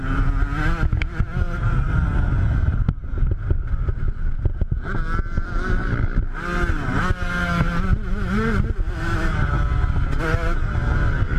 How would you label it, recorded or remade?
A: recorded